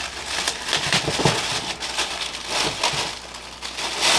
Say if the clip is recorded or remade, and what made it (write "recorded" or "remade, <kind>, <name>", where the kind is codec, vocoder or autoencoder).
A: recorded